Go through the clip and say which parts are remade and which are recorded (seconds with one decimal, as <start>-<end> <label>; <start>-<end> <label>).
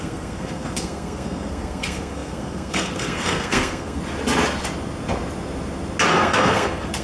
0.0-4.0 remade; 4.0-6.1 recorded; 6.1-7.0 remade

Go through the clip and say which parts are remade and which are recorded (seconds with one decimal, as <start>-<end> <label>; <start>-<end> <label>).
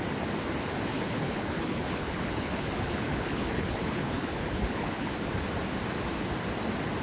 0.0-0.9 recorded; 0.9-5.1 remade; 5.1-7.0 recorded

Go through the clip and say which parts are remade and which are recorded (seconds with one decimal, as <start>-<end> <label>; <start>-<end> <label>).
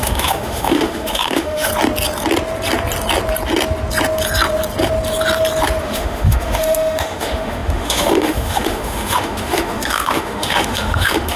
0.0-1.7 remade; 1.7-5.8 recorded; 5.8-11.4 remade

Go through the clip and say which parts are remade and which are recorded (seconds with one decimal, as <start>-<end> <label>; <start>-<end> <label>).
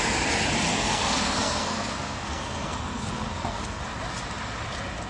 0.0-0.7 recorded; 0.7-3.8 remade; 3.8-5.1 recorded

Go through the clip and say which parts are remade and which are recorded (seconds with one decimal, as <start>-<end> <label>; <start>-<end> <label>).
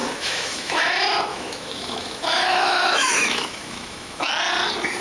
0.0-0.8 remade; 0.8-1.3 recorded; 1.3-4.3 remade; 4.3-5.0 recorded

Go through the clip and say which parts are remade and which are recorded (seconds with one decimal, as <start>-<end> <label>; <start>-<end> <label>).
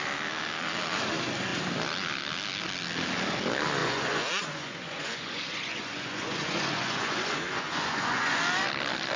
0.0-3.8 recorded; 3.8-8.4 remade; 8.4-9.2 recorded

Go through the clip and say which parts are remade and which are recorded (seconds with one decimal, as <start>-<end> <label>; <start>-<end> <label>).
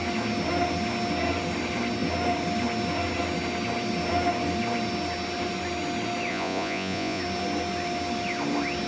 0.0-6.3 recorded; 6.3-7.2 remade; 7.2-8.9 recorded